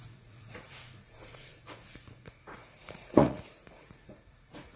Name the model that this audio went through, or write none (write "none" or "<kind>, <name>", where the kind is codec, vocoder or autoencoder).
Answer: vocoder, Vocos